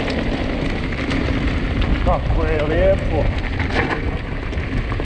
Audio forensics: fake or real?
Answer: real